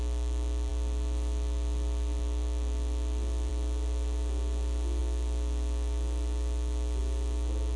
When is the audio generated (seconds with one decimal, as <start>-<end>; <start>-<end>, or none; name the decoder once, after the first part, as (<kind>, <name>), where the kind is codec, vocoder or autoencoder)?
none